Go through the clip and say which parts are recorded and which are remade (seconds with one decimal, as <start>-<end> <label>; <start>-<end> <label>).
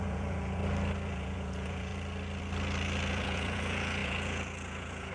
0.0-0.6 remade; 0.6-1.1 recorded; 1.1-1.9 remade; 1.9-3.1 recorded; 3.1-5.1 remade